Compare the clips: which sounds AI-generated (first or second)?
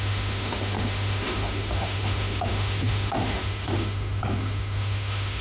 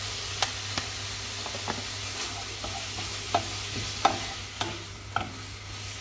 first